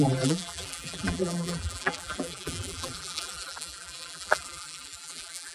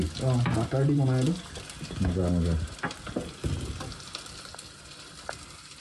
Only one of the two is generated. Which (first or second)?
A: first